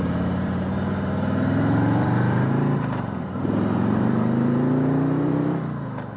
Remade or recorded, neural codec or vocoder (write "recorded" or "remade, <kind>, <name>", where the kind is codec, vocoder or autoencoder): remade, vocoder, BigVGAN v2